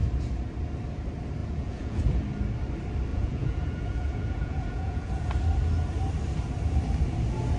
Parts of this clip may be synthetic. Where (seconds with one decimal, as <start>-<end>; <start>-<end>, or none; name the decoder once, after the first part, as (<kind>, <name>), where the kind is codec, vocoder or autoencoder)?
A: 1.4-2.2 (vocoder, Vocos); 3.1-5.3